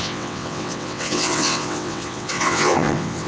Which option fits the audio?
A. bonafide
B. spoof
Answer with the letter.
B